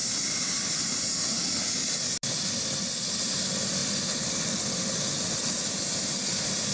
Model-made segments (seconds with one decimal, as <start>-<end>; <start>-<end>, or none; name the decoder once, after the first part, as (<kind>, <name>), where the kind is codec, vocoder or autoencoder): none